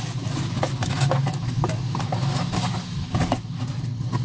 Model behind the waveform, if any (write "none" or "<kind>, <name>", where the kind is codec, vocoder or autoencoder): none